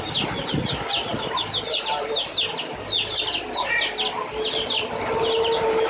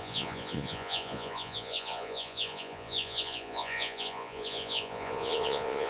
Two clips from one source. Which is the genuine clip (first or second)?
first